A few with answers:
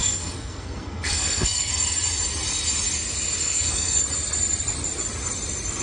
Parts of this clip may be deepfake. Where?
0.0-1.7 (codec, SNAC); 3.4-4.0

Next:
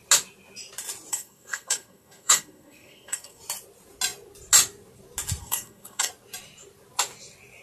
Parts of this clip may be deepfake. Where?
1.1-3.4 (codec, SNAC); 5.4-6.1

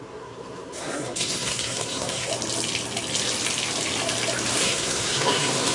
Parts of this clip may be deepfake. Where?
0.0-2.3 (codec, SNAC); 4.6-5.7

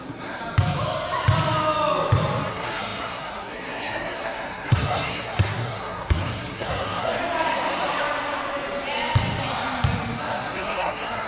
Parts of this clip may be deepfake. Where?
0.0-0.4 (codec, SNAC); 2.5-7.2; 10.2-11.3